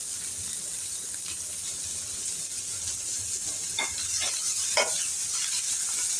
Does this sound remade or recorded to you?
recorded